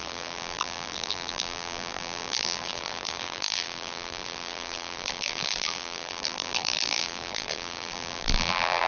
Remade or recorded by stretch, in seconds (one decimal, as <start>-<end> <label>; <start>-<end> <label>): 0.0-8.9 remade